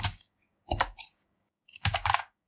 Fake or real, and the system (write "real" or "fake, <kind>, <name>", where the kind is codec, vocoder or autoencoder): fake, codec, DAC